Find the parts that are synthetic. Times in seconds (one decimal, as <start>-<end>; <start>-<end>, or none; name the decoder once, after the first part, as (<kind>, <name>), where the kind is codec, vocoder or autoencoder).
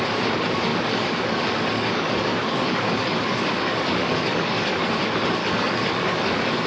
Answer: 0.7-4.7 (codec, DAC); 5.4-6.7